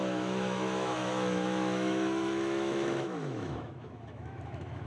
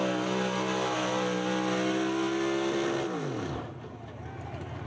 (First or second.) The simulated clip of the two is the first